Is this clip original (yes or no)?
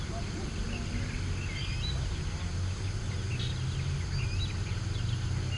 yes